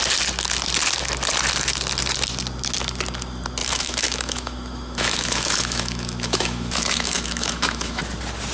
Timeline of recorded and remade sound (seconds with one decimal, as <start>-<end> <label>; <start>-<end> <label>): 0.0-3.6 recorded; 3.6-8.0 remade; 8.0-8.5 recorded